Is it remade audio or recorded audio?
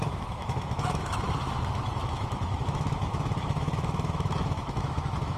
remade